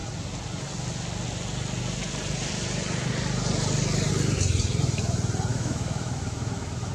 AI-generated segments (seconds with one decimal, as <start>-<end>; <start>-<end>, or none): 5.5-6.9